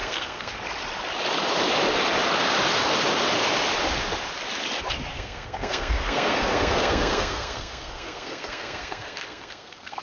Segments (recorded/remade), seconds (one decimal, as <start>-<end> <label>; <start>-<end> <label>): 0.0-0.6 remade; 0.6-5.1 recorded; 5.1-10.0 remade